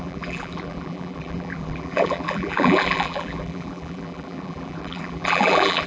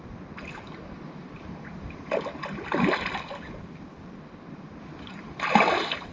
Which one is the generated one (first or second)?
first